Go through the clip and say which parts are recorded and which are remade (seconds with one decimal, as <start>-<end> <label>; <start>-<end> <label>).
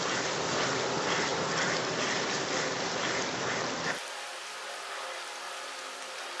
0.0-6.4 recorded